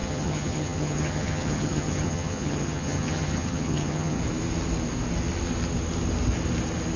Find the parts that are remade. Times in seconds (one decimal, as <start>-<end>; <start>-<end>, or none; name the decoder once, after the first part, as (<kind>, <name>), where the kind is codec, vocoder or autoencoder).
0.0-4.2 (vocoder, HiFi-GAN)